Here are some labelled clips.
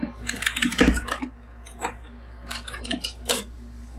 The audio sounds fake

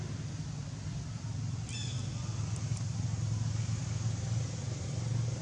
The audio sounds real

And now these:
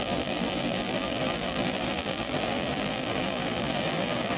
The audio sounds fake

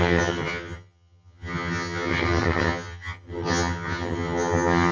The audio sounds fake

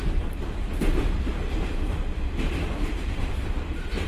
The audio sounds fake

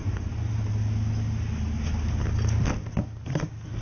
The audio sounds real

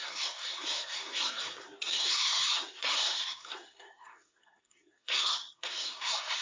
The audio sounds fake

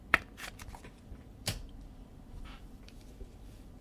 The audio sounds fake